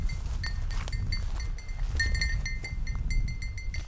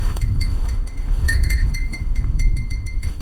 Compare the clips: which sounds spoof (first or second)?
second